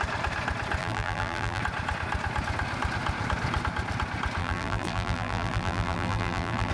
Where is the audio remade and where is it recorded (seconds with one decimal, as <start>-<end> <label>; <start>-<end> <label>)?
0.0-0.8 recorded; 0.8-1.6 remade; 1.6-4.4 recorded; 4.4-6.7 remade